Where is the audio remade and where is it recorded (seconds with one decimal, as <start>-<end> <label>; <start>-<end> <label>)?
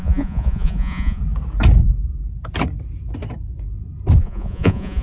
0.0-1.2 remade; 1.2-4.2 recorded; 4.2-5.0 remade